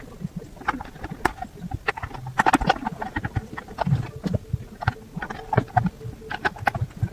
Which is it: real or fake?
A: real